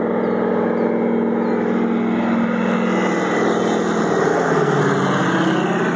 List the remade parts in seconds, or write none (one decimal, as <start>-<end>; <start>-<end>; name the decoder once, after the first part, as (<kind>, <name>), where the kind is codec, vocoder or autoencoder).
4.3-4.8 (codec, SNAC)